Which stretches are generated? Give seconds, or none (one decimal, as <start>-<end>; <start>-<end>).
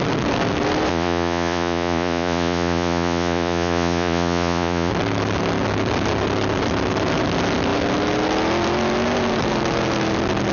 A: 0.9-4.9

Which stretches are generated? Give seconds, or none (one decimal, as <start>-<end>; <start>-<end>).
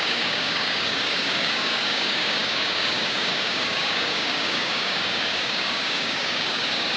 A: 0.0-7.0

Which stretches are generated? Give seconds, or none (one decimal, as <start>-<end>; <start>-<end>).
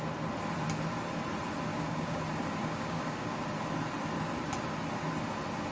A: 1.7-2.2; 2.6-3.4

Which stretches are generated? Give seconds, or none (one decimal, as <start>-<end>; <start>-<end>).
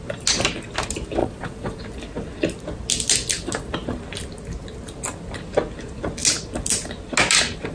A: 1.2-1.8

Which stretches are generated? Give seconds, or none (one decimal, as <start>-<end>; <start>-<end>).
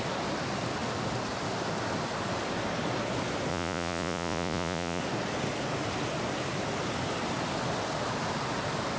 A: 3.5-5.0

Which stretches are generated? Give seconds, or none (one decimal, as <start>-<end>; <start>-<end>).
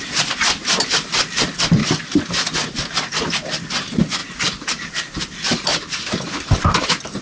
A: 0.0-1.8; 2.5-4.2; 4.7-7.2